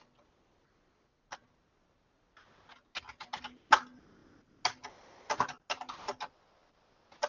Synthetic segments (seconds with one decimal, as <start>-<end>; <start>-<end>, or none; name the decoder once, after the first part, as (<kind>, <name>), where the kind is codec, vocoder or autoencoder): none